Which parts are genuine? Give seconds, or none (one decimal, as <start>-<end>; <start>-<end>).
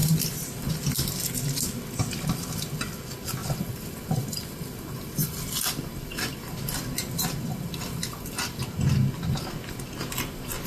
0.7-3.4; 8.6-10.7